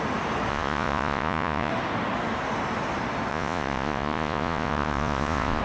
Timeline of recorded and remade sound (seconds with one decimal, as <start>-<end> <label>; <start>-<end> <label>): 0.0-0.5 recorded; 0.5-1.7 remade; 1.7-3.3 recorded; 3.3-5.6 remade